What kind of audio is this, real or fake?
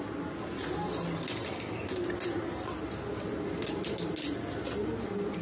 real